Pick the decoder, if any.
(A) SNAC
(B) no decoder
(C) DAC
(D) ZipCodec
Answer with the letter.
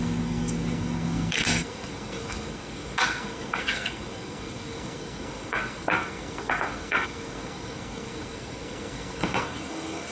A